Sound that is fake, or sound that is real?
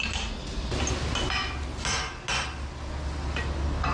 real